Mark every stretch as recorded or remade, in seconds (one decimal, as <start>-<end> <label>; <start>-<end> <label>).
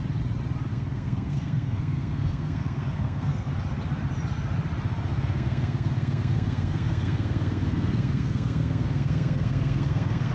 0.0-0.7 recorded; 0.7-3.5 remade; 3.5-5.1 recorded; 5.1-10.3 remade